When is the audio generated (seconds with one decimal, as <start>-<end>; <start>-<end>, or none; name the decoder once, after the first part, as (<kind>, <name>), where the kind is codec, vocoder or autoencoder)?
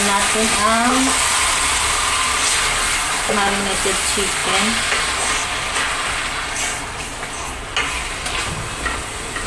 none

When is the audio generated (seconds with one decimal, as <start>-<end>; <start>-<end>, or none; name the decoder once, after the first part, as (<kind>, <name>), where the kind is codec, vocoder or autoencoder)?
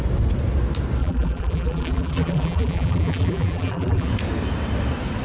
1.0-4.1 (vocoder, BigVGAN v2)